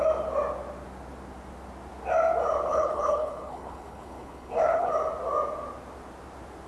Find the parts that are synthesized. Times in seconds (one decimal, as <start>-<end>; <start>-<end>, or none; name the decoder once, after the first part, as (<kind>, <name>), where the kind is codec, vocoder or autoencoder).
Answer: 2.7-4.9 (codec, HILCodec)